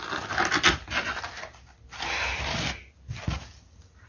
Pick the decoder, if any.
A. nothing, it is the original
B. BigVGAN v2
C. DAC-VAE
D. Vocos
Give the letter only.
A